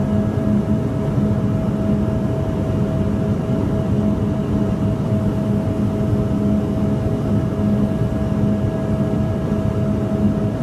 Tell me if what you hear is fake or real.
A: real